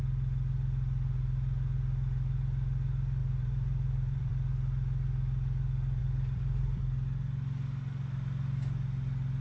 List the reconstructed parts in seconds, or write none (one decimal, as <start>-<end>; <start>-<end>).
3.2-4.3; 6.0-6.8